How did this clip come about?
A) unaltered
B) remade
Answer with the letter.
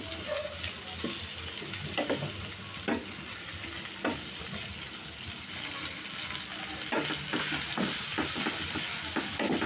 A